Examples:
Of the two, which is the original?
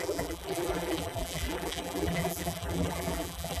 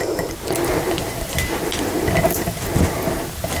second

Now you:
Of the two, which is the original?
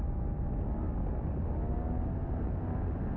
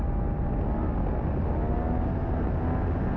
second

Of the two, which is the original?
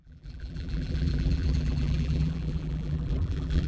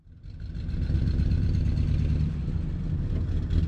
second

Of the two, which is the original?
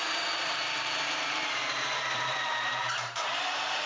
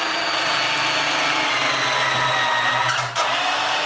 second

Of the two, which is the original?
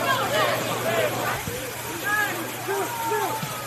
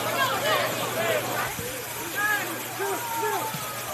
second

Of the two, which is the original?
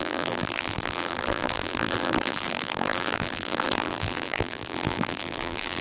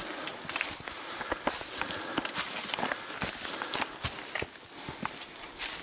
second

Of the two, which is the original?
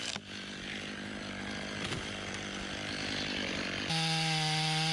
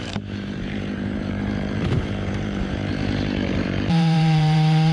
first